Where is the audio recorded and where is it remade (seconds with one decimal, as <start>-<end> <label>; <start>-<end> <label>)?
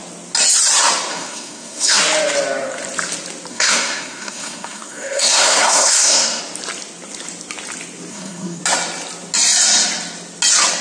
0.0-1.1 recorded; 1.1-2.0 remade; 2.0-3.5 recorded; 3.5-6.4 remade; 6.4-8.1 recorded; 8.1-8.6 remade; 8.6-10.8 recorded